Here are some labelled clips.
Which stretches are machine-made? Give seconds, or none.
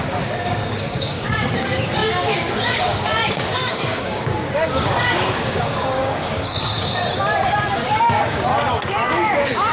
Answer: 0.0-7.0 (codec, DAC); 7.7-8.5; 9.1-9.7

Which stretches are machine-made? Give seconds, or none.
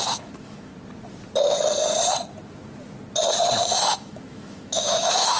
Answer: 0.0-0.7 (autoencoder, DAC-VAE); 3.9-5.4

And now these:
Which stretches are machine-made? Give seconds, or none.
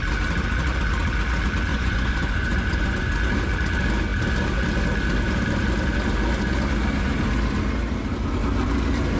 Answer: 1.7-3.1 (vocoder, Vocos)